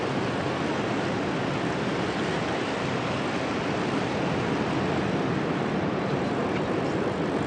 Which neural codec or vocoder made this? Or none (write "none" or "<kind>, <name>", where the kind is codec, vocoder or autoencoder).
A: none